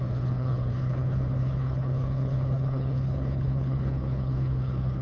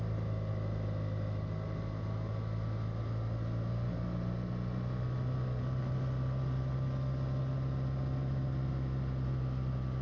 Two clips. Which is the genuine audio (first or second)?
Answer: second